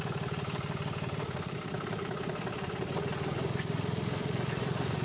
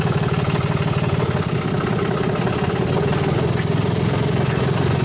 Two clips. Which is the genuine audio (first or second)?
second